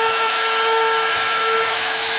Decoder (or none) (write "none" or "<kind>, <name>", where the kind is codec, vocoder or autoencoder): autoencoder, DAC-VAE